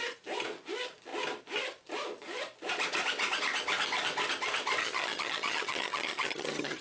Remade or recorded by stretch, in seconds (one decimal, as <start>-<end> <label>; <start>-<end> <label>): 0.0-4.8 recorded; 4.8-6.8 remade